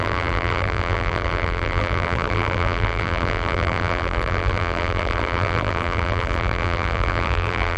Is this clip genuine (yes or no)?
no